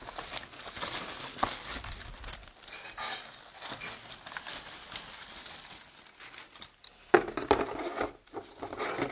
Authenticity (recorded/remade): recorded